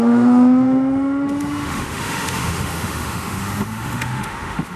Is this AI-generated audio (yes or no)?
yes